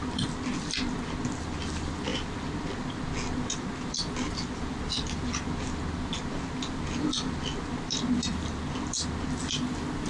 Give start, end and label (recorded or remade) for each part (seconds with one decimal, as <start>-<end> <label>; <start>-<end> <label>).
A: 0.0-10.1 recorded